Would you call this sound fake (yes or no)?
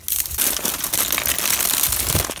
no